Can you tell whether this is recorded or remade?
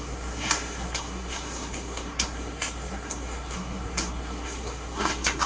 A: remade